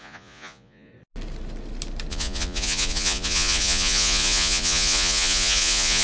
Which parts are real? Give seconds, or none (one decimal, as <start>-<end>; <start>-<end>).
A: 0.9-2.1